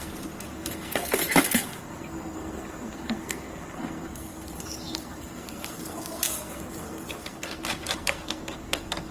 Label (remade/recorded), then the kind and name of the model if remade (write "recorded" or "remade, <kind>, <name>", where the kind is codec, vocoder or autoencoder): remade, codec, SNAC